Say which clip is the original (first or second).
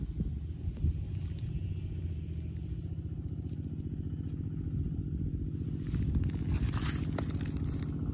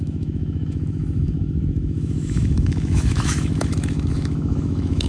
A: first